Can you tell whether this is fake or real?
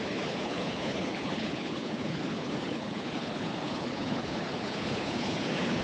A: fake